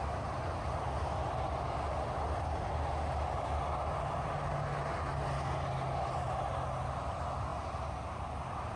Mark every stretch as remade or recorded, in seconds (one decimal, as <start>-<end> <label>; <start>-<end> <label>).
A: 0.0-8.8 recorded